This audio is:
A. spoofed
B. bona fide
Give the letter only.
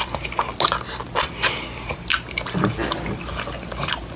B